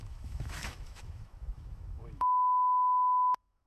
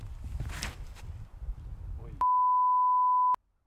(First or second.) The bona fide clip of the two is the second